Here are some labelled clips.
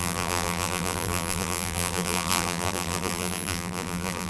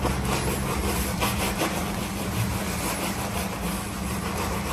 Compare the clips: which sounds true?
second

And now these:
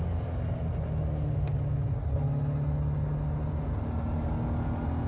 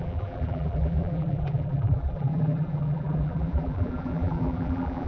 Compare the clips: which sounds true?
first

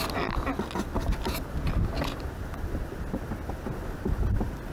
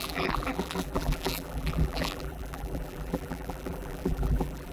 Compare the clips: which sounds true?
first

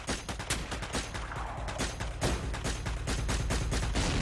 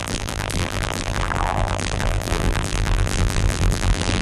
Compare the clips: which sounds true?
first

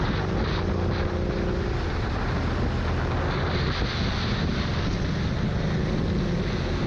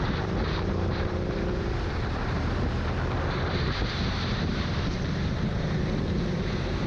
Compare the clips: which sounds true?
first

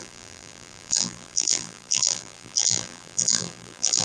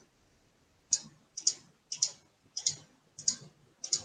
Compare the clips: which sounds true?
second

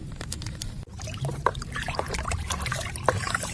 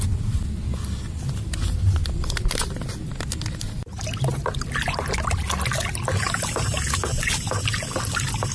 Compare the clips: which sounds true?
second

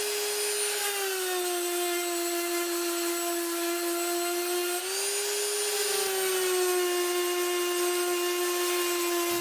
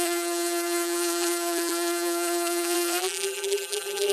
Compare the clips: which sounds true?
first